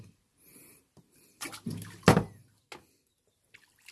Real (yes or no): yes